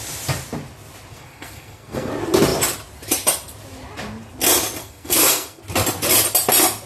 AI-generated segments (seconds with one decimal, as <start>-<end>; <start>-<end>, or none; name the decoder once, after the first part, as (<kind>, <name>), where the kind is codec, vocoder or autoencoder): 1.1-2.1 (codec, SNAC); 4.8-5.6